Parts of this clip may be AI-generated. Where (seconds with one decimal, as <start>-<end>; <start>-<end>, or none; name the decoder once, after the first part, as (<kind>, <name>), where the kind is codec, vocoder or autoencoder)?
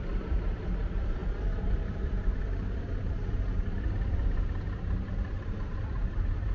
0.0-6.5 (vocoder, BigVGAN v2)